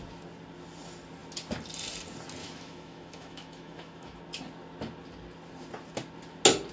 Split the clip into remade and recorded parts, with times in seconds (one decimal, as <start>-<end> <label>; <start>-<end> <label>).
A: 0.0-2.4 recorded; 2.4-4.2 remade; 4.2-6.7 recorded